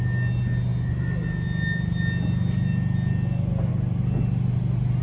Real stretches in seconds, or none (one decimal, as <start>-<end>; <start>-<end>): 0.0-5.0